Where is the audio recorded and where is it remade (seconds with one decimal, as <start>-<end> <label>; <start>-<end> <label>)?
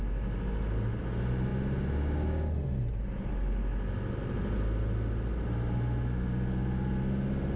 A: 0.0-7.6 recorded